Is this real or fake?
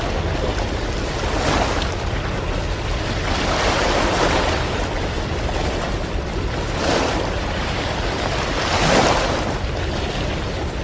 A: real